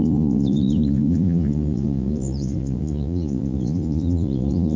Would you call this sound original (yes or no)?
no